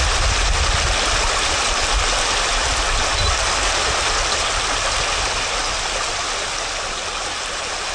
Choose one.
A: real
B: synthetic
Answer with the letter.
A